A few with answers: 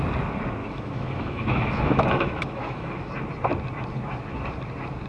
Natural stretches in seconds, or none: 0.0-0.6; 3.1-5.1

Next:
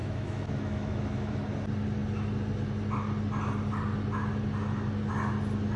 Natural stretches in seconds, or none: 1.3-5.8

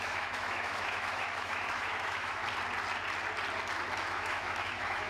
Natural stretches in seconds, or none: 2.4-4.0

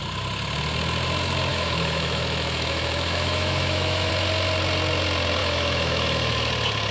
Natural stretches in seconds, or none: 0.0-1.5; 4.1-5.4; 6.5-6.9

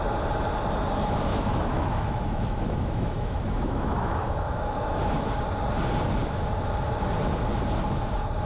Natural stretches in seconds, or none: 0.0-1.3; 5.2-8.5

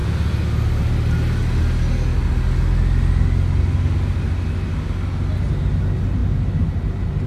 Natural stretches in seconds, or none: 0.0-7.3

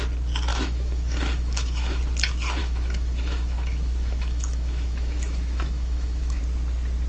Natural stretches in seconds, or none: 0.0-0.5; 2.0-2.6; 6.4-7.1